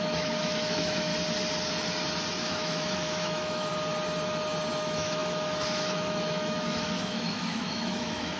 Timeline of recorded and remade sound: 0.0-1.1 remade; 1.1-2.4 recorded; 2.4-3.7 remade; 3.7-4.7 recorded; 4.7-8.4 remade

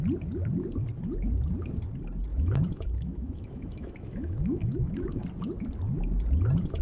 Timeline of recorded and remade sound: 0.0-2.3 recorded; 2.3-5.2 remade; 5.2-6.8 recorded

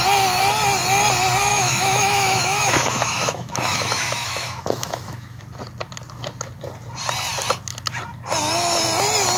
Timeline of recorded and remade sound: 0.0-1.5 recorded; 1.5-5.4 remade; 5.4-9.4 recorded

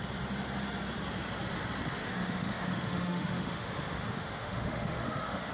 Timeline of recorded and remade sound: 0.0-2.0 recorded; 2.0-5.5 remade

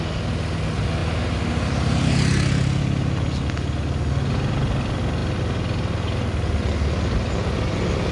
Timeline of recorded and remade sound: 0.0-8.1 recorded